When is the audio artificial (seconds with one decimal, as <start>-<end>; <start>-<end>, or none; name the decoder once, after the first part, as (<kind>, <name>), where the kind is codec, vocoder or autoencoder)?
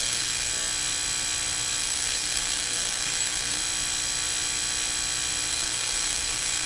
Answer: 0.0-0.5 (codec, SNAC); 1.8-3.6; 5.5-6.7